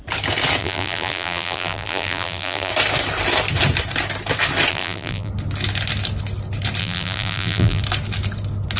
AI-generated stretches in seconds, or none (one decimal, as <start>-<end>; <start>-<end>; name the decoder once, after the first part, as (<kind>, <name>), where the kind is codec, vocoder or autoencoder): 0.6-2.7 (vocoder, BigVGAN v2); 4.7-5.3; 6.8-7.8